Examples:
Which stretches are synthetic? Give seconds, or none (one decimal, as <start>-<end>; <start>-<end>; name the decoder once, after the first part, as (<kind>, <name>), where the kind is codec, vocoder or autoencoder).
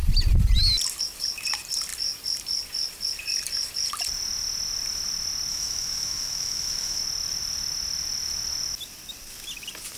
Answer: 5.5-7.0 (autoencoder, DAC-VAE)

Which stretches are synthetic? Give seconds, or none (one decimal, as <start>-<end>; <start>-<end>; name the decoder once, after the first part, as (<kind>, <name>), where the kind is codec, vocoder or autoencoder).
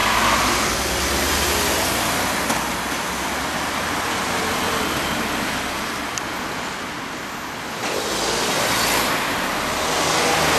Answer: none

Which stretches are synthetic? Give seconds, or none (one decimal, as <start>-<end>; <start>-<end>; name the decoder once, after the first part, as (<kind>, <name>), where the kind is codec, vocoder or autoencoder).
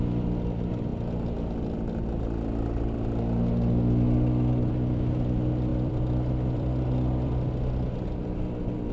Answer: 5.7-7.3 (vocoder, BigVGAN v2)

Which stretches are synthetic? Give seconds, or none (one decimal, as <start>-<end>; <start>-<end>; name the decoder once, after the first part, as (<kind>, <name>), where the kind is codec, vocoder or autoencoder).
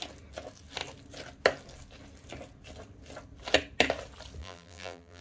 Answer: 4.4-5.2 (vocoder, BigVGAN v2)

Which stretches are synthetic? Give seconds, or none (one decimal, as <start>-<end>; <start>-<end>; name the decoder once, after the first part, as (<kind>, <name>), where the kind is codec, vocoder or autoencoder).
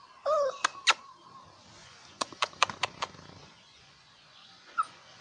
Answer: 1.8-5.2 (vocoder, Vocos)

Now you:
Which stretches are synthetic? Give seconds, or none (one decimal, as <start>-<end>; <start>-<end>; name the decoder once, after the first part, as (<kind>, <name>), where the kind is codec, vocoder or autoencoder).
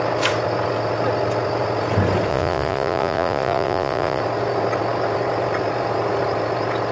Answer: 2.3-4.2 (vocoder, Vocos)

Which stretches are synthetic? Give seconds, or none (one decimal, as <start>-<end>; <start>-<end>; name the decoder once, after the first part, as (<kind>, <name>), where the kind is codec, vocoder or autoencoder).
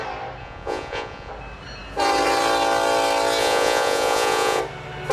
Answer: 0.4-1.3 (vocoder, Vocos); 3.4-4.6